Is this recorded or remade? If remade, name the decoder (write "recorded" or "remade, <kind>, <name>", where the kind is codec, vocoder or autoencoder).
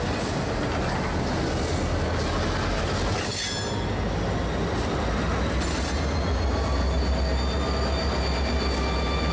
recorded